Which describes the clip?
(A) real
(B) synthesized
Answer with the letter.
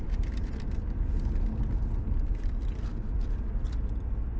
A